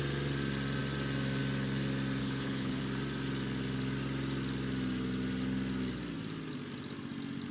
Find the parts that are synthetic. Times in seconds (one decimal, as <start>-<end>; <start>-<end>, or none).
2.2-2.8